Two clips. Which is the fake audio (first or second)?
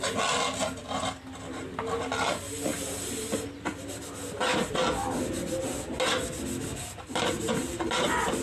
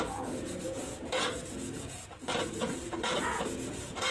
second